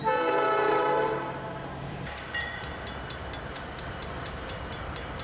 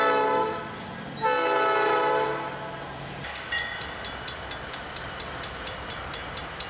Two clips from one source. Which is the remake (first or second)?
first